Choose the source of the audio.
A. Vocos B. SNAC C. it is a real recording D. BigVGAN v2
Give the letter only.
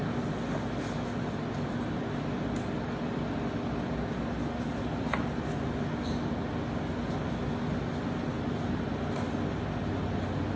C